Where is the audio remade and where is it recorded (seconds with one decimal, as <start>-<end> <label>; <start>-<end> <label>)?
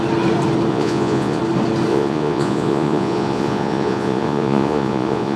0.0-0.7 recorded; 0.7-1.4 remade; 1.4-1.9 recorded; 1.9-5.4 remade